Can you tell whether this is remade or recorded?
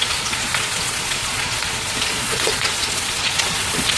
remade